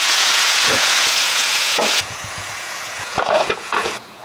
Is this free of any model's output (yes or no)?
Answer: no